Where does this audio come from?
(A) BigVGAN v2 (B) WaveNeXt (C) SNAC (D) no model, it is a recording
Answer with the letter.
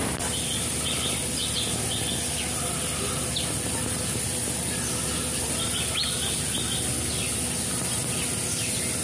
D